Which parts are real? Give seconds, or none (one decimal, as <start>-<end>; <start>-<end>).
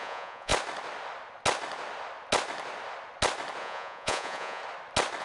0.5-3.6; 4.6-5.2